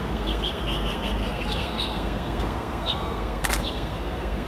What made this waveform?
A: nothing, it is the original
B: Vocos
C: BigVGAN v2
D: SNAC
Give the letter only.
D